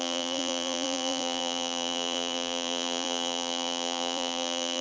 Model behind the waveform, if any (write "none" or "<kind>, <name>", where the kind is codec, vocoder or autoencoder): vocoder, BigVGAN v2